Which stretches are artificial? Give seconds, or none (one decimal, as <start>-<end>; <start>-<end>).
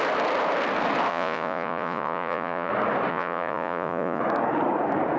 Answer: 1.1-2.7; 3.1-4.2